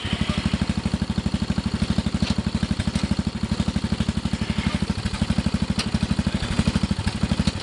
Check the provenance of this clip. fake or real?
real